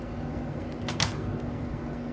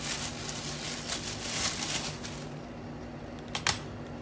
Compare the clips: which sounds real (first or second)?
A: second